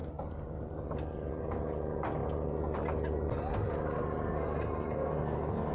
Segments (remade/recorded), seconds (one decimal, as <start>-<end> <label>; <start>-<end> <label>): 0.0-5.7 recorded